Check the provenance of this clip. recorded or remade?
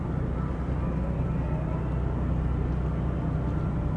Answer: recorded